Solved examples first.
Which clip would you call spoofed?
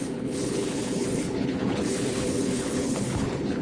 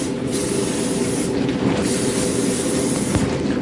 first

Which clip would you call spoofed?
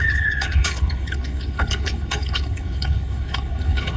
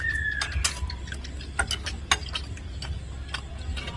first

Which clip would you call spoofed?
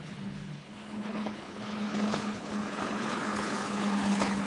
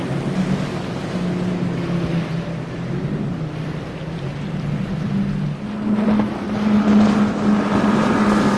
first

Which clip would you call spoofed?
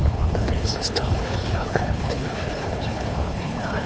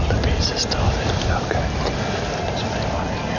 first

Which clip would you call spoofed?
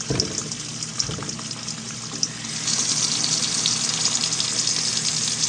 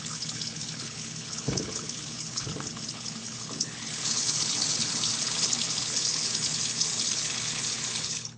second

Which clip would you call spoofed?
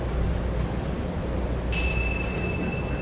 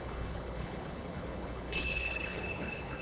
second